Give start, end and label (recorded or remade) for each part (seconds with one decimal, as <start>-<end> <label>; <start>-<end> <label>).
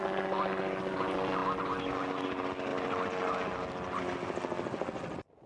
0.0-5.5 recorded